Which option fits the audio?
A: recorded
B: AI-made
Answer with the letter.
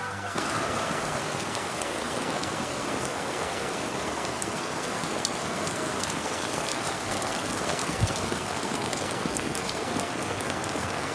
B